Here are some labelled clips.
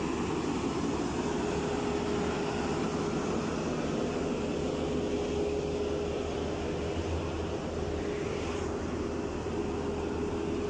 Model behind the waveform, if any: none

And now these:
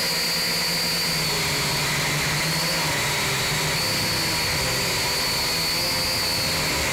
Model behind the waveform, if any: none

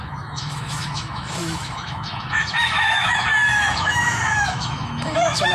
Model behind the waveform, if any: autoencoder, DAC-VAE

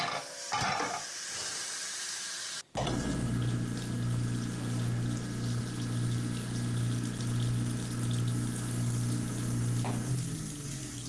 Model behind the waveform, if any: none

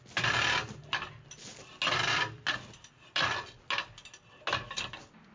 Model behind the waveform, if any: none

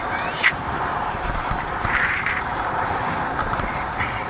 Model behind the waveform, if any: vocoder, BigVGAN v2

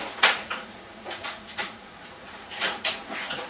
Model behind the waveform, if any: vocoder, Vocos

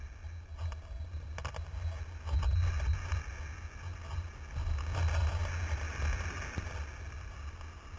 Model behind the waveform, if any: none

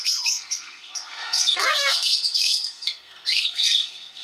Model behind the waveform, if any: codec, SNAC